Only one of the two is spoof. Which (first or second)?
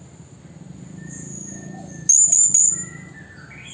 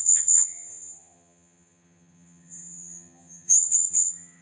second